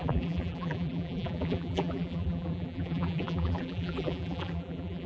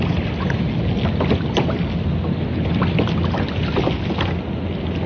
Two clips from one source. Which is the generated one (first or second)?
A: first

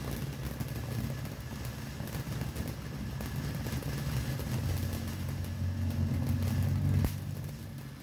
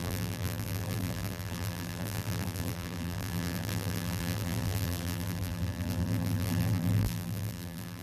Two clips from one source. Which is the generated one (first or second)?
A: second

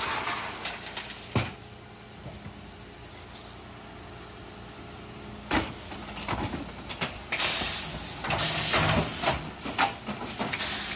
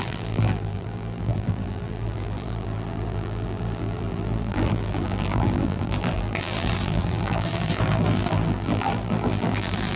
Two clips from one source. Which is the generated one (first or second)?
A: second